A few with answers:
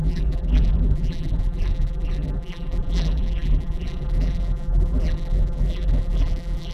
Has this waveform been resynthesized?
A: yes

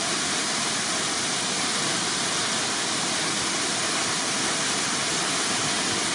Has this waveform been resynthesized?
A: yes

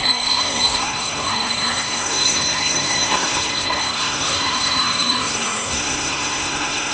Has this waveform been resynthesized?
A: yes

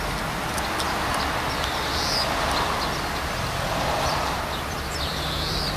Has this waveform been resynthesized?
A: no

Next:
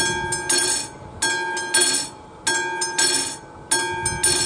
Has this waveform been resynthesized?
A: no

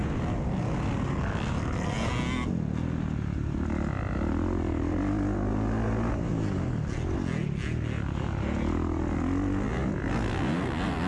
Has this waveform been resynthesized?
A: no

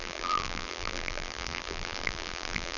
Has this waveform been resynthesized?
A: yes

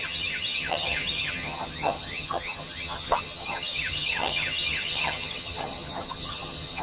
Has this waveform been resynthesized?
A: yes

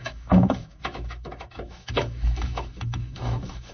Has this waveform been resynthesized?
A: yes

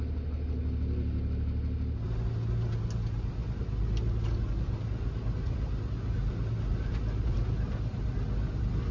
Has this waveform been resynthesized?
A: no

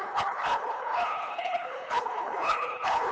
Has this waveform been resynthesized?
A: yes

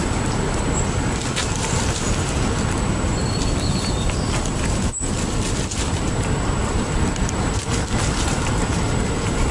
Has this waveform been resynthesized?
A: yes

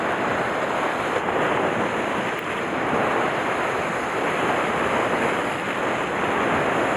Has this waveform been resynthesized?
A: no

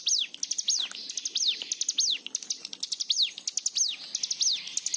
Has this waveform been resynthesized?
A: no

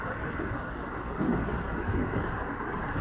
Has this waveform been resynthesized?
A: yes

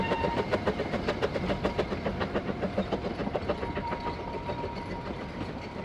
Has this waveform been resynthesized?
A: yes